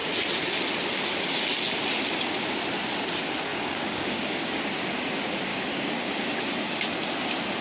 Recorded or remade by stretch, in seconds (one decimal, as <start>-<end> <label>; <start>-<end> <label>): 0.0-3.5 recorded; 3.5-4.6 remade; 4.6-5.5 recorded; 5.5-6.1 remade; 6.1-7.6 recorded